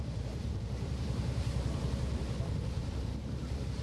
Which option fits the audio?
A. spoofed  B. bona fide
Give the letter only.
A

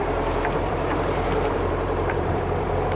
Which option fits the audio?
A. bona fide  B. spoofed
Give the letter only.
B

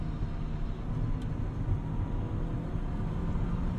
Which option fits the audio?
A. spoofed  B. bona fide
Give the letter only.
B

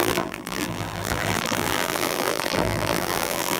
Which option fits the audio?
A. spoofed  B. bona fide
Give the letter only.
A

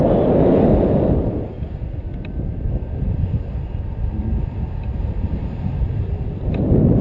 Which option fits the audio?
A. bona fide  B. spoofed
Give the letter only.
B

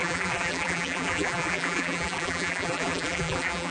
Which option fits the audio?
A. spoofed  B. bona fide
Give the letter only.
A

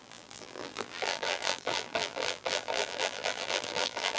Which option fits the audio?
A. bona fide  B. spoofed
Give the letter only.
B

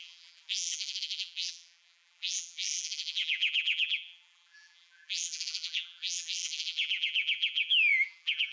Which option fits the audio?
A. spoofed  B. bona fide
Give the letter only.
A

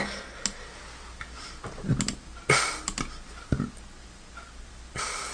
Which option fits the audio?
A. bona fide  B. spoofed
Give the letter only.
A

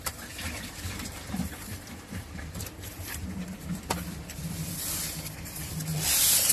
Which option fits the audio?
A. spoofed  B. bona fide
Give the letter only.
A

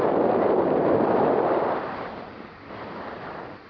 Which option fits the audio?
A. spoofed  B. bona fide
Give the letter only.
A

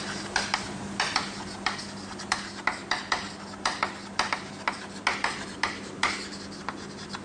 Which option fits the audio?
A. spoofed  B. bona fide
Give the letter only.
B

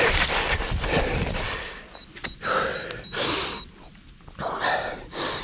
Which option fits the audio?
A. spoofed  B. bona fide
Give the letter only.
A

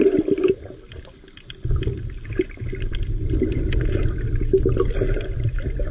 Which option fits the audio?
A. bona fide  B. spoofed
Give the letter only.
A